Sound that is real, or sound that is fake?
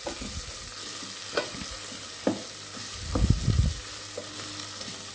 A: real